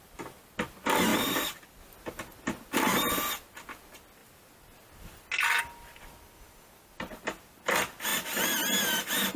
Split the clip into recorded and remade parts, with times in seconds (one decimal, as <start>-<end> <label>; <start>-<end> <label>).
0.0-1.1 recorded; 1.1-1.7 remade; 1.7-9.4 recorded